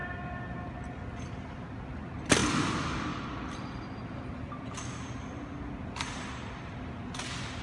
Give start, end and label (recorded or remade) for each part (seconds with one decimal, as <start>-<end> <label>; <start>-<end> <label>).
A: 0.0-7.6 recorded